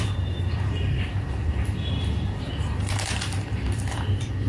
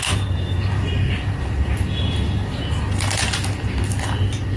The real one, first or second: second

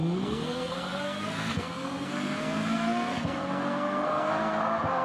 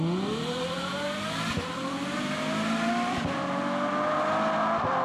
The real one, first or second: second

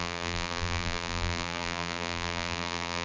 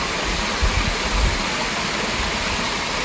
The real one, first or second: second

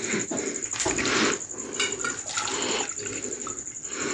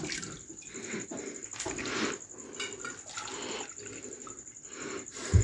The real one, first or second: second